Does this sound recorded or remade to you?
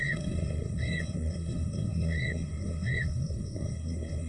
remade